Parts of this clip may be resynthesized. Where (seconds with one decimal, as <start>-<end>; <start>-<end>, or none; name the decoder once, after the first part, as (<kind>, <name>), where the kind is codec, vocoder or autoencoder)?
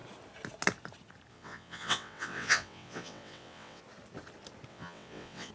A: 1.3-3.8 (vocoder, WaveNeXt); 4.7-5.5